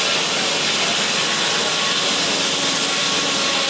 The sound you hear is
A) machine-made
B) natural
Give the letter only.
B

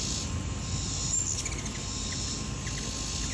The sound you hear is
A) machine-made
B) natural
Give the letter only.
B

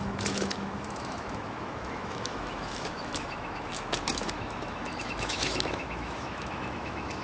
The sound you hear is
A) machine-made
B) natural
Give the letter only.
A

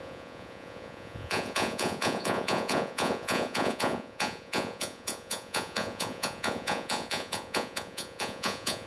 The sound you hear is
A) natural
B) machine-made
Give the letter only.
B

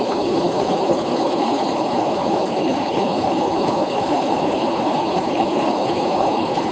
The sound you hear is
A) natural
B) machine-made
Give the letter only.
B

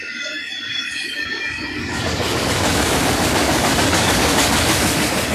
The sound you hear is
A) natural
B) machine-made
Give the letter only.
B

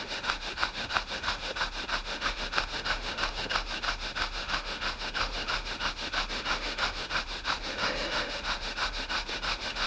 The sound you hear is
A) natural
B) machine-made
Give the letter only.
B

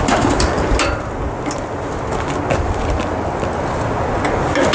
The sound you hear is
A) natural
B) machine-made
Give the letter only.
A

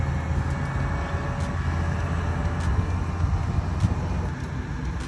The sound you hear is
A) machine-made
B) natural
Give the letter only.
B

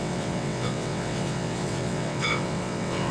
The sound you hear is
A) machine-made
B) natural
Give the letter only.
A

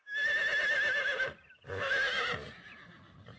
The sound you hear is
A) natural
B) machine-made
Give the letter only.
A